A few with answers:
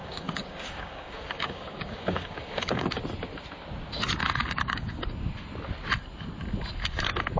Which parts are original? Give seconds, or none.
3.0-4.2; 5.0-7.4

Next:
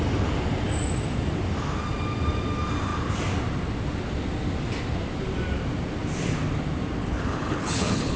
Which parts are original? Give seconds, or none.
0.0-7.0

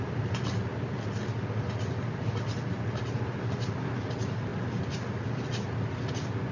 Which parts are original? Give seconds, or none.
0.0-6.5

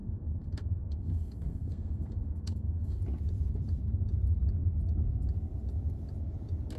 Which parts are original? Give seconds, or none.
3.0-6.8

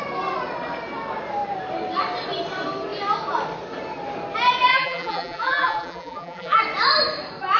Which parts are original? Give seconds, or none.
0.0-4.7; 6.6-7.6